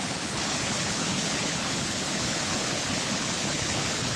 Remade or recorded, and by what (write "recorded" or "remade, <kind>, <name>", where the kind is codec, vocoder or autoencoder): remade, codec, HILCodec